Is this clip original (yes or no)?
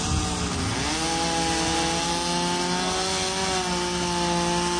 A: yes